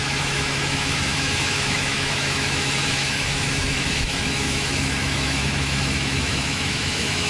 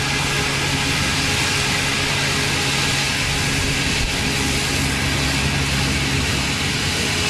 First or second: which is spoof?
first